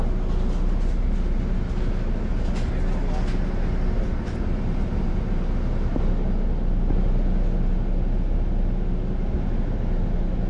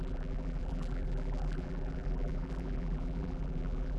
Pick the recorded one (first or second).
first